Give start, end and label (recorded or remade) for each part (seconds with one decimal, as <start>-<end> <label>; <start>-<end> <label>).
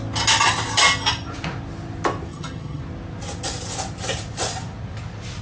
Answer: 0.0-2.3 recorded; 2.3-2.8 remade; 2.8-5.4 recorded